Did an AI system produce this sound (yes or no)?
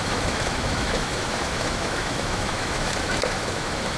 yes